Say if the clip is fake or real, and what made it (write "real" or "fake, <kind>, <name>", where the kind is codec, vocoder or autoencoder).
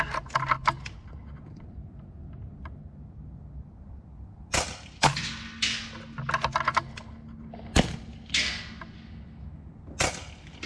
real